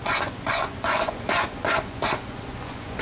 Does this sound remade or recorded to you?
remade